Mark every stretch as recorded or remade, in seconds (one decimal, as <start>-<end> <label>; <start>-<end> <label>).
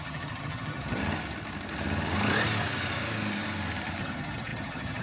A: 0.0-1.0 remade; 1.0-4.0 recorded; 4.0-5.0 remade